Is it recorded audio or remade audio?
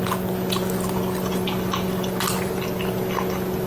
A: recorded